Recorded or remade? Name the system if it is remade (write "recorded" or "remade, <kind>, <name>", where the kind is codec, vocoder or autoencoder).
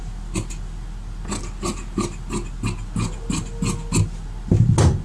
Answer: recorded